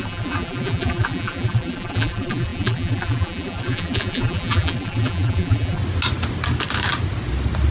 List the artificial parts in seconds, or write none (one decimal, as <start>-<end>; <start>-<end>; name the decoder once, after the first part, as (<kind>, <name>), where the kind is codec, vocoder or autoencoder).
0.0-5.8 (vocoder, BigVGAN v2)